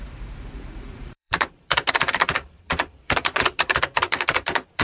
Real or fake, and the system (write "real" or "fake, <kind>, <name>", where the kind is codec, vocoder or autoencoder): fake, vocoder, BigVGAN v2